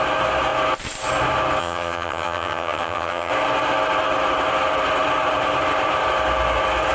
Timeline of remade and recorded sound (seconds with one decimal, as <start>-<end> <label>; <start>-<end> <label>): 0.0-1.6 recorded; 1.6-3.3 remade; 3.3-6.9 recorded